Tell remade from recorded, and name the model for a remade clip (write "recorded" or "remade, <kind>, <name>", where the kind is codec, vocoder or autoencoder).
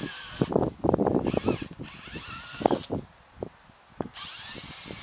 recorded